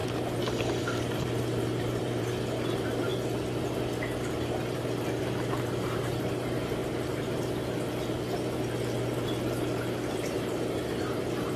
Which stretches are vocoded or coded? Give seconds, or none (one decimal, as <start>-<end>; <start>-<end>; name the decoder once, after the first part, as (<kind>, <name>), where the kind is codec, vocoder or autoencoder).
1.0-3.1 (vocoder, BigVGAN v2); 5.7-6.8; 10.1-11.6